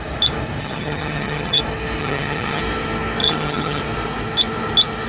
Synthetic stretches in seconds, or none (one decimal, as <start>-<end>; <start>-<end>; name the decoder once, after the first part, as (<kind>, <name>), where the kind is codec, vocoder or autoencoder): 0.6-1.6 (vocoder, HiFi-GAN); 2.0-2.6; 3.2-3.8